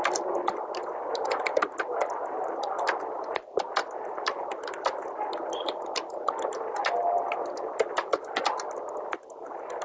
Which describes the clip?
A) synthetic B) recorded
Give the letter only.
B